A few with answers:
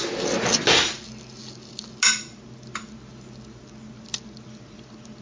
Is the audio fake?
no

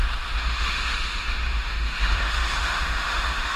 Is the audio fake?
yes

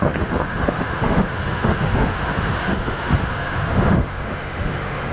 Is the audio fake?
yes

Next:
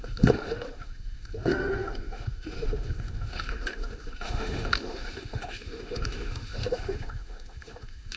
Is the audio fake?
yes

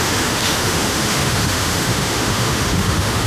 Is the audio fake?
yes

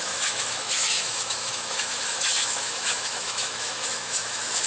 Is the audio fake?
yes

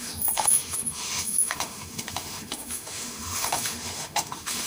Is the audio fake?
yes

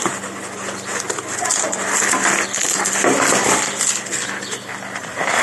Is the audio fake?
no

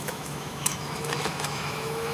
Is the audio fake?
yes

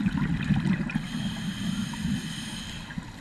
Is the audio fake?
no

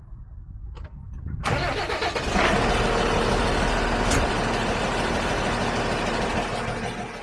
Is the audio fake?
no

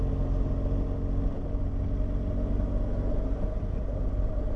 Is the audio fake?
no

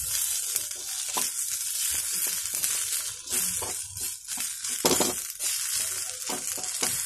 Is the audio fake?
no